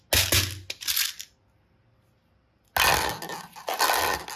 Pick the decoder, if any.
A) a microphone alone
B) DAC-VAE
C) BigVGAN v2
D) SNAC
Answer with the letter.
A